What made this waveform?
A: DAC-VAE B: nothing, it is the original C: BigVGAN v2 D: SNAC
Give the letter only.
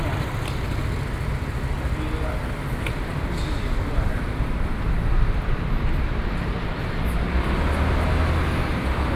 B